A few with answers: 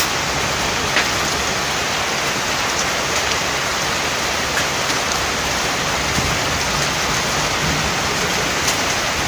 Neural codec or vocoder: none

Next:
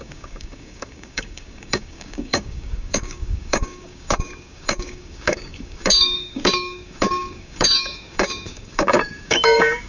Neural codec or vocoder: codec, DAC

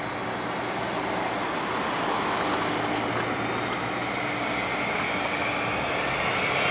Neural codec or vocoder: none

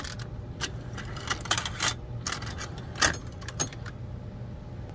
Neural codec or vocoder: none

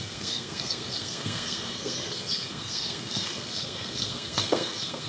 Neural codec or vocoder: codec, SNAC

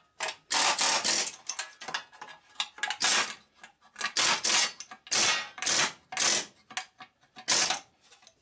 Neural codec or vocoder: none